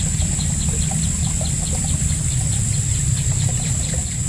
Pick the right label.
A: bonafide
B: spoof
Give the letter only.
A